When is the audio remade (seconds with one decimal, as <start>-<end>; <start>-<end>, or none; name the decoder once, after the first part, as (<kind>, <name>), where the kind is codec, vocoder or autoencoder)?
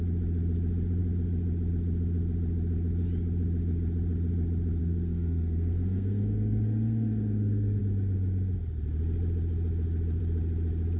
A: 4.8-7.8 (codec, SNAC)